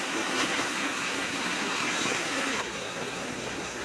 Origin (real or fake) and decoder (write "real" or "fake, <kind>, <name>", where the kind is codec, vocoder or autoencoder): fake, codec, SNAC